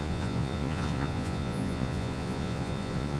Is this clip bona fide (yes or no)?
no